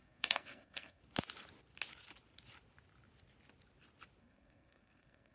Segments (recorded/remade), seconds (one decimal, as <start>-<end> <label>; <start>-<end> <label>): 0.0-1.0 remade; 1.0-4.2 recorded; 4.2-5.3 remade